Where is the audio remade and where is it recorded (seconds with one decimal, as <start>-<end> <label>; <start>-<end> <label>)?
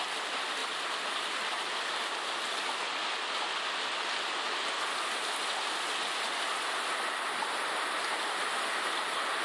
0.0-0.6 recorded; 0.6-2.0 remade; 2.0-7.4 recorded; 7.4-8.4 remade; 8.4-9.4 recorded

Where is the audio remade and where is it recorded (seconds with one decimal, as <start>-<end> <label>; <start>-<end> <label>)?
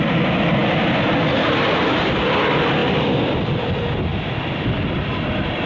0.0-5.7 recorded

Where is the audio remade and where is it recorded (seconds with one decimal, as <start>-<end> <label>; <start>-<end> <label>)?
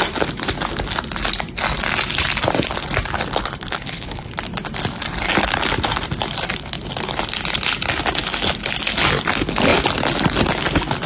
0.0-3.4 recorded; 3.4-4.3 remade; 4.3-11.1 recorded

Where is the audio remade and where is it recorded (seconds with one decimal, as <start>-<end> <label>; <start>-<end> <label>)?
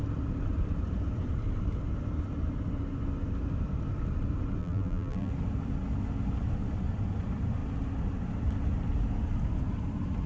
0.0-4.6 recorded; 4.6-5.3 remade; 5.3-10.3 recorded